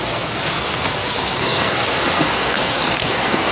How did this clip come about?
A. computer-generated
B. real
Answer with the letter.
A